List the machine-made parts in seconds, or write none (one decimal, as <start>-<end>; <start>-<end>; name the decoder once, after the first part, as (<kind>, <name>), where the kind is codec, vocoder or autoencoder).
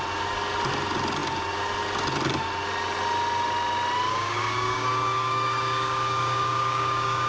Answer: 4.1-7.3 (codec, DAC)